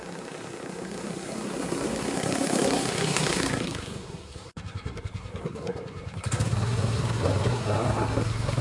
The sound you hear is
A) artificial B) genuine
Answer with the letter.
A